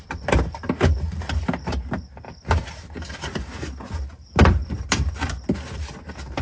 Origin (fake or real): real